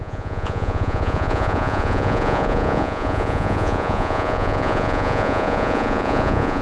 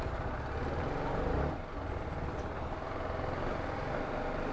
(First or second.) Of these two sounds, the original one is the second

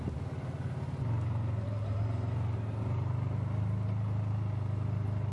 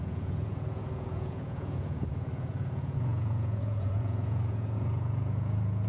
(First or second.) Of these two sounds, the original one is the first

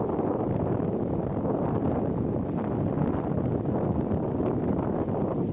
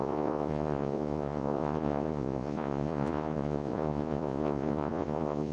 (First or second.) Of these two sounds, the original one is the first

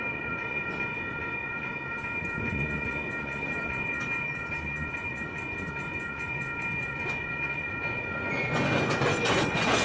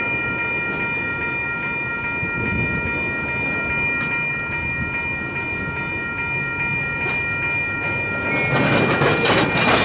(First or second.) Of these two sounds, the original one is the second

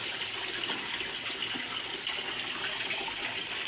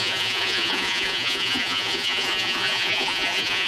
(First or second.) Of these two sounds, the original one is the first